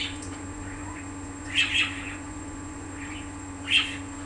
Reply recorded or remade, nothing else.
remade